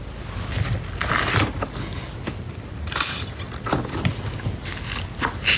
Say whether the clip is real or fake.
real